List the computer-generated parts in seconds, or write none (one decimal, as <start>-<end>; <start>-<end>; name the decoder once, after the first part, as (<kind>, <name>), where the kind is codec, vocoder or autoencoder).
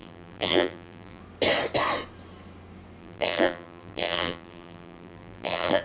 0.0-1.2 (vocoder, BigVGAN v2); 3.0-5.8